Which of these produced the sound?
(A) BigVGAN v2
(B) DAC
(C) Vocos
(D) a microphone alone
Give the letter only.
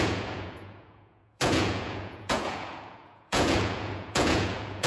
C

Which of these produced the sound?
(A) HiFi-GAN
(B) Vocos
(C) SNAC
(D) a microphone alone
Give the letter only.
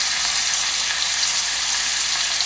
D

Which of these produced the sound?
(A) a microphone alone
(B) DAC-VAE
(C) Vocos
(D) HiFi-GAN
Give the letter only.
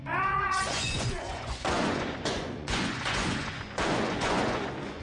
C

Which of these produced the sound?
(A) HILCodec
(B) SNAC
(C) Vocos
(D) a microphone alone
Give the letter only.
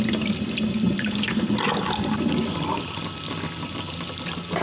D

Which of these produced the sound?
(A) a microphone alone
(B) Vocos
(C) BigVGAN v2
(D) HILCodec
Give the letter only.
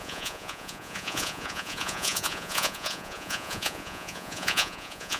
B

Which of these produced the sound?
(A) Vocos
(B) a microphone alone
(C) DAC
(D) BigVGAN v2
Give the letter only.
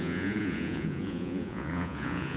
A